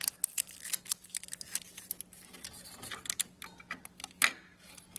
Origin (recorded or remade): recorded